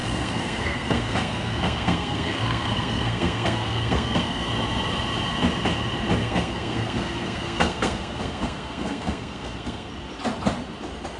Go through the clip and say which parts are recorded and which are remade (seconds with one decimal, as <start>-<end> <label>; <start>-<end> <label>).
0.0-4.5 remade; 4.5-6.2 recorded; 6.2-9.9 remade; 9.9-11.2 recorded